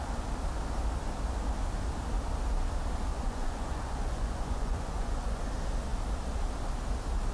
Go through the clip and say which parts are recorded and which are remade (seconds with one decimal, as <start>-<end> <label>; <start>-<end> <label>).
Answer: 0.0-3.1 recorded; 3.1-5.4 remade; 5.4-7.3 recorded